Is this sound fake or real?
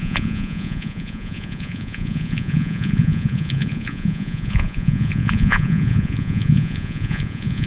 fake